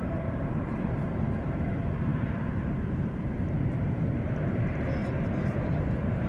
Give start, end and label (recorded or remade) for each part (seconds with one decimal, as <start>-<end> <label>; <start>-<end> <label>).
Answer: 0.0-6.3 remade